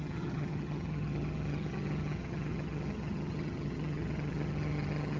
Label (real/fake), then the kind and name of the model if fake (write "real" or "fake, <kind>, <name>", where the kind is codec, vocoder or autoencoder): fake, vocoder, HiFi-GAN